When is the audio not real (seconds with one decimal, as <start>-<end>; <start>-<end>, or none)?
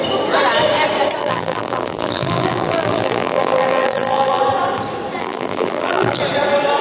1.2-4.4; 5.2-6.2